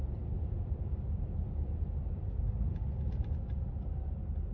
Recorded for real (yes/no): yes